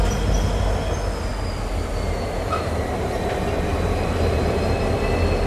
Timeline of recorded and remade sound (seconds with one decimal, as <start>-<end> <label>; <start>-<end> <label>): 0.0-1.3 recorded; 1.3-4.6 remade; 4.6-5.5 recorded